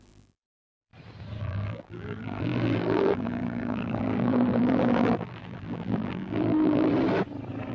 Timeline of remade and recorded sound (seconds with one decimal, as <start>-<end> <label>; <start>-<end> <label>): 0.0-0.9 remade; 0.9-1.4 recorded; 1.4-6.9 remade; 6.9-7.7 recorded